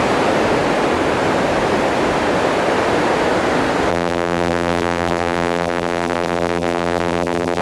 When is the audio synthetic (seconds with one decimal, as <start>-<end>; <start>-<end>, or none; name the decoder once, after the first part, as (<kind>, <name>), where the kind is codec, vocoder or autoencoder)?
3.9-7.6 (vocoder, BigVGAN v2)